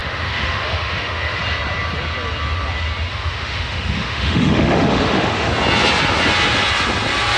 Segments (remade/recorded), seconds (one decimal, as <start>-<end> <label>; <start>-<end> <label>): 0.0-1.4 remade; 1.4-3.1 recorded; 3.1-5.5 remade; 5.5-7.4 recorded